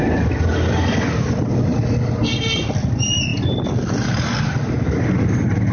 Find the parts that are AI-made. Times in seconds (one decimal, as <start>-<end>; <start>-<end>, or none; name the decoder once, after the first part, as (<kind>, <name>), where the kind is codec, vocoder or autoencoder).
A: none